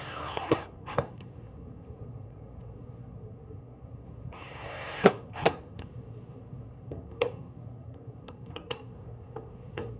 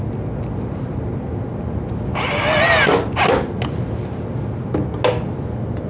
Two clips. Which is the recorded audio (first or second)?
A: second